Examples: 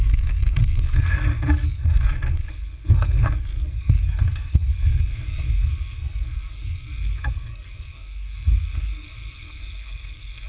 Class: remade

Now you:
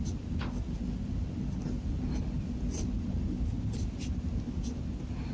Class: recorded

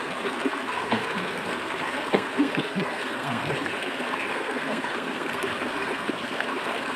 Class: remade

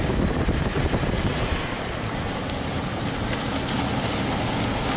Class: recorded